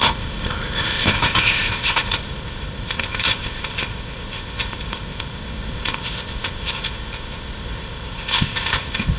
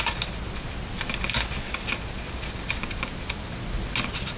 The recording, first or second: second